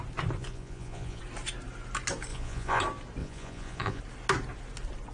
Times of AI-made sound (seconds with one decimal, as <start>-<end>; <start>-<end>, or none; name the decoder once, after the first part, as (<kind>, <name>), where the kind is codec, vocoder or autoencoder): 0.4-1.2 (vocoder, Vocos); 2.3-2.8; 3.2-4.0